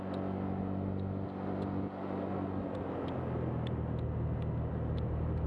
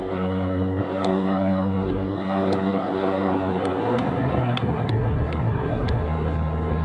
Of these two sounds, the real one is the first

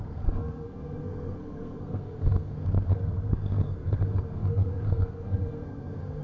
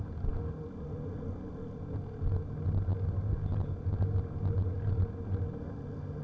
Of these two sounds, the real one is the second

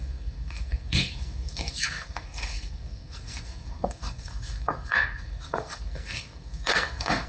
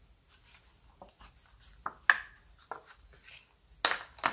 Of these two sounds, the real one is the second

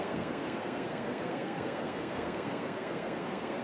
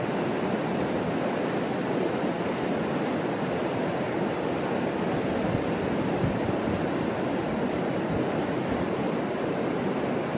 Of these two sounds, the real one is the second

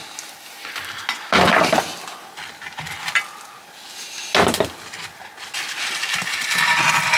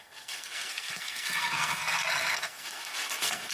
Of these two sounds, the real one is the first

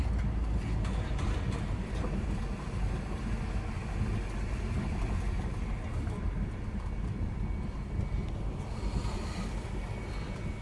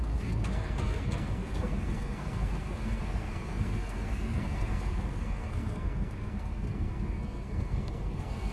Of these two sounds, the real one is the first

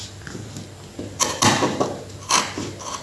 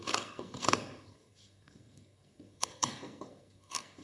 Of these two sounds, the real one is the first